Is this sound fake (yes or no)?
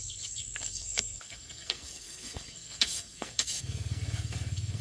yes